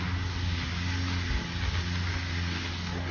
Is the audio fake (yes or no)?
no